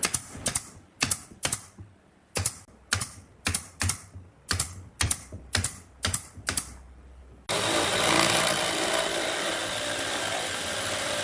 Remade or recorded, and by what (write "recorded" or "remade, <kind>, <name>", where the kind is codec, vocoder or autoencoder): recorded